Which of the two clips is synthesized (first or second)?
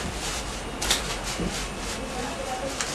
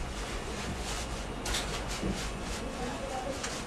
second